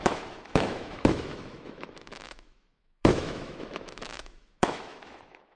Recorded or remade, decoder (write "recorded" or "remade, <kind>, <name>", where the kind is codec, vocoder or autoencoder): remade, autoencoder, DAC-VAE